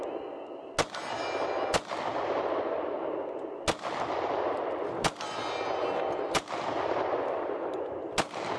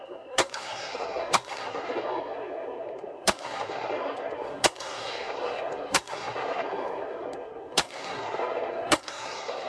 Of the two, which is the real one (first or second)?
first